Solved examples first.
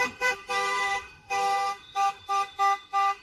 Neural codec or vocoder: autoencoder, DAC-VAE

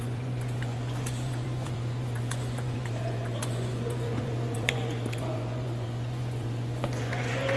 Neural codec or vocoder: vocoder, Vocos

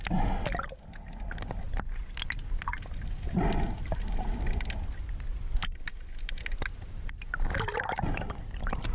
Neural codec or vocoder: none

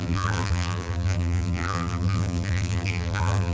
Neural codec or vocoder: vocoder, BigVGAN v2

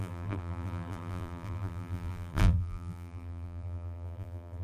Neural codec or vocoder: vocoder, BigVGAN v2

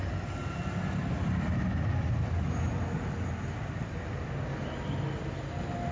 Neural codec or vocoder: none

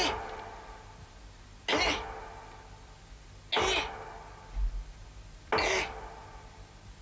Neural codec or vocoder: none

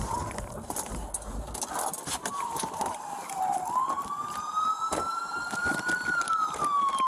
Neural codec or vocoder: none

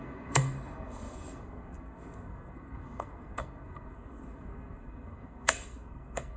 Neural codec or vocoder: codec, SNAC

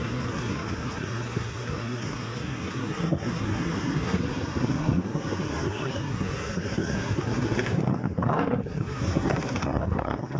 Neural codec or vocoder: codec, SNAC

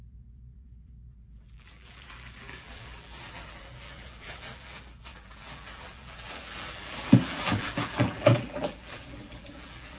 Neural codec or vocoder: vocoder, BigVGAN v2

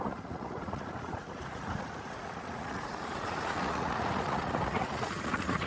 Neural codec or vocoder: vocoder, Vocos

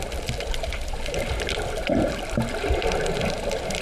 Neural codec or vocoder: none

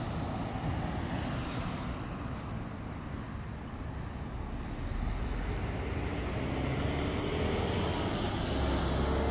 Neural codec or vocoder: none